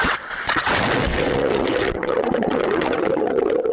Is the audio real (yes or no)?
no